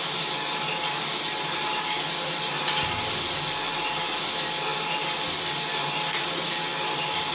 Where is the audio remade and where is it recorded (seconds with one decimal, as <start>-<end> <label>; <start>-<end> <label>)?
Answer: 0.0-6.7 recorded; 6.7-7.3 remade